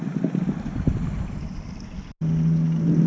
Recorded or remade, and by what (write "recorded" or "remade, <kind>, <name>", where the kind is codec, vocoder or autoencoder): recorded